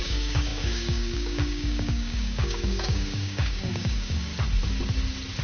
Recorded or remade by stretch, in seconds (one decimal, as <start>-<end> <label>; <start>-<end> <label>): 0.0-4.3 remade; 4.3-5.4 recorded